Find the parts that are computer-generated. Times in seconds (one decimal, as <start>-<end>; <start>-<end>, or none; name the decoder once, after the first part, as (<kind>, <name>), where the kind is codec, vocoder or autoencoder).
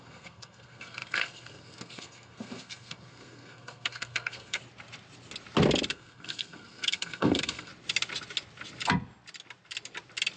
0.0-4.6 (codec, SNAC); 5.9-7.7